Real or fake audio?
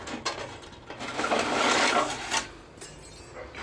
real